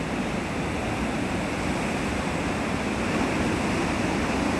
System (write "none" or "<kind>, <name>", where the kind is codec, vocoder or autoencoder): none